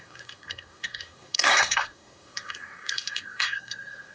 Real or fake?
fake